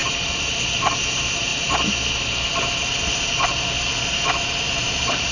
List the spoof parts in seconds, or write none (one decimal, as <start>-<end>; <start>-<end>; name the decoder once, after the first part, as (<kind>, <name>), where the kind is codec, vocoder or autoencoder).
0.0-1.5 (vocoder, BigVGAN v2); 4.7-5.3